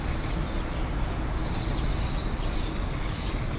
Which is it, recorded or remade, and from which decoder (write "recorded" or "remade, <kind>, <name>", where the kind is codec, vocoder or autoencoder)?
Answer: recorded